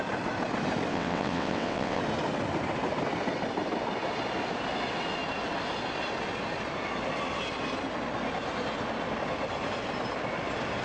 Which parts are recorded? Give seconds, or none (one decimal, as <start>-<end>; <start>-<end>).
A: 0.0-0.9; 2.0-10.8